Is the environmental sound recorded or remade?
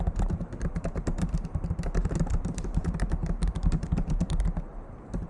remade